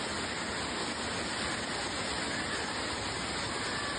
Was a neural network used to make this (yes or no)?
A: no